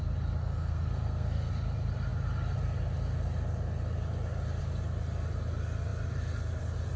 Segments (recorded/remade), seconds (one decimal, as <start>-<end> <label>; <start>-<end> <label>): 0.0-0.4 recorded; 0.4-1.5 remade; 1.5-7.0 recorded